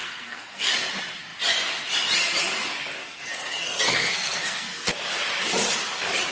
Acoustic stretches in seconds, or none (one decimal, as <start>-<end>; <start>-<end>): 0.7-3.0; 4.9-6.3